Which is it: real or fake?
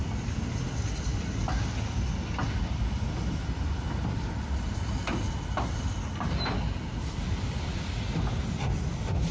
real